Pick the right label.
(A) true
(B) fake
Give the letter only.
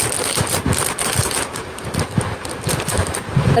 A